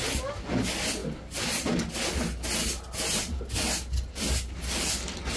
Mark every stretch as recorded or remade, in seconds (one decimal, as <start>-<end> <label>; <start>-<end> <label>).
0.0-5.4 recorded